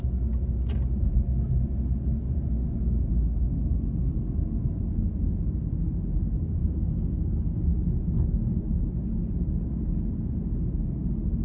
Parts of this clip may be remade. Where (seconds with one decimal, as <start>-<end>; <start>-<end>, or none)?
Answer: 6.6-7.6